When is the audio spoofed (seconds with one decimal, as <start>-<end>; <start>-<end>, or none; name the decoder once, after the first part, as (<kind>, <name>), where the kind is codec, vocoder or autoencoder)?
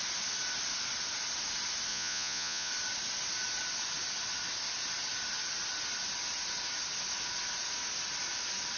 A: 1.9-2.7 (vocoder, Vocos)